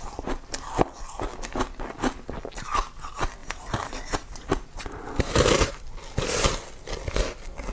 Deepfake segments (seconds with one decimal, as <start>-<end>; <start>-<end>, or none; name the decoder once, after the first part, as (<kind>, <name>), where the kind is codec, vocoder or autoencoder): 3.4-5.7 (vocoder, BigVGAN v2)